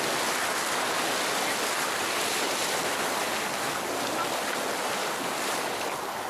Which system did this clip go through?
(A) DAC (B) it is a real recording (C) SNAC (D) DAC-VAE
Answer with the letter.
B